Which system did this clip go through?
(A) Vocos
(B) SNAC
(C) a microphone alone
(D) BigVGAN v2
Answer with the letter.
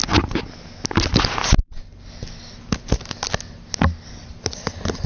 C